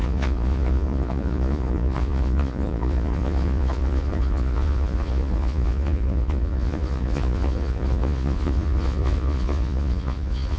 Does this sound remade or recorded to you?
remade